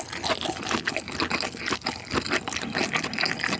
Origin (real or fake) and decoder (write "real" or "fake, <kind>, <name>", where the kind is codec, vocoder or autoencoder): real